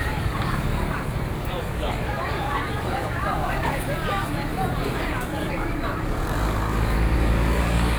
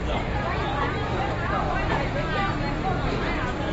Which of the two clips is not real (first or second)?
first